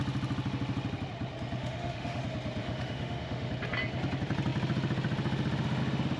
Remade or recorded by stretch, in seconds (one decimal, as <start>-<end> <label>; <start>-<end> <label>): 0.0-1.6 recorded; 1.6-2.2 remade; 2.2-2.6 recorded; 2.6-3.5 remade; 3.5-6.2 recorded